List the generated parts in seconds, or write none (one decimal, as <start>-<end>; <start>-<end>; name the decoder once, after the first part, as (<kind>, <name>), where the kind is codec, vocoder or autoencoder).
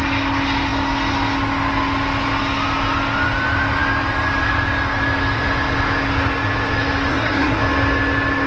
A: 7.1-7.6 (codec, SNAC)